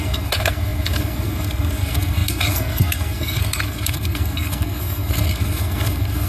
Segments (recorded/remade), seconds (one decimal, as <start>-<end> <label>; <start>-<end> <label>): 0.0-6.3 remade